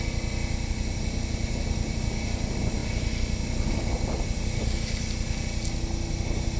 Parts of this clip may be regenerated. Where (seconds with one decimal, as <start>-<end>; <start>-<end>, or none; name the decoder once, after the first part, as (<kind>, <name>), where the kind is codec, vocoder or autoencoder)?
none